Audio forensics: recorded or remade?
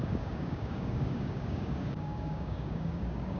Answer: remade